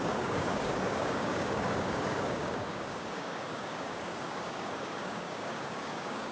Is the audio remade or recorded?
remade